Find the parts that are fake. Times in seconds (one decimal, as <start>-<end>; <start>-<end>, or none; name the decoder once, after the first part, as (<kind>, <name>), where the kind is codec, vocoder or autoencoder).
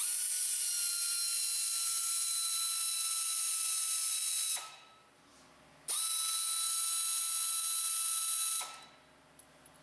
none